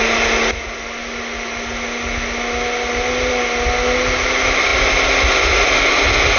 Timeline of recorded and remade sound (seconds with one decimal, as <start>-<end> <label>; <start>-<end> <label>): 0.0-6.4 recorded